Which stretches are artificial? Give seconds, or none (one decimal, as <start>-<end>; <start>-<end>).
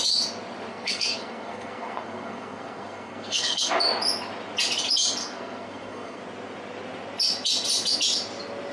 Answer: 0.7-3.7; 5.2-6.2